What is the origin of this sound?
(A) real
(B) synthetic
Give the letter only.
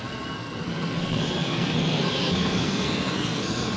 B